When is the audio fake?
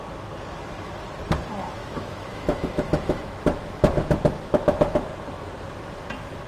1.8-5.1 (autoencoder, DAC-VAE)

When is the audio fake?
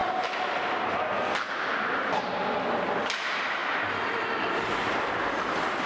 none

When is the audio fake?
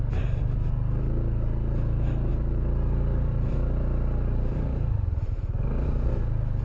2.3-5.3 (vocoder, BigVGAN v2)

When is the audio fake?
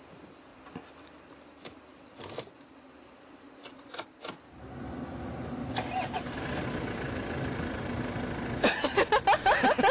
none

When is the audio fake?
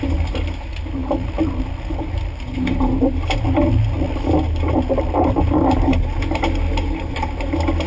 none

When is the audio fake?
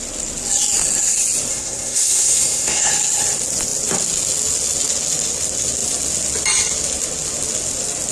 1.5-2.9 (codec, SNAC)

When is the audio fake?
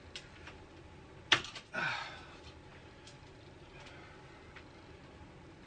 none